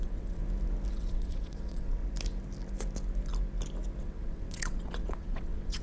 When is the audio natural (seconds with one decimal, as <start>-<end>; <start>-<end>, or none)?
0.4-0.9; 2.0-4.0